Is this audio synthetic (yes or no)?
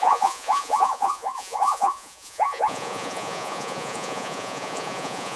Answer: yes